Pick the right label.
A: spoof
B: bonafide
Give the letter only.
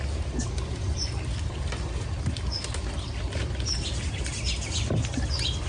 B